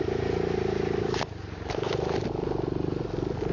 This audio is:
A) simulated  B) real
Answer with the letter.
B